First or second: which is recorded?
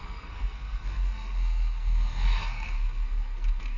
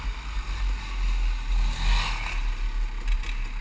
second